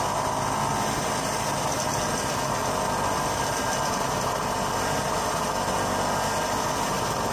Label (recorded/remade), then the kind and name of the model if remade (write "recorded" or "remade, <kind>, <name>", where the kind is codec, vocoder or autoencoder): recorded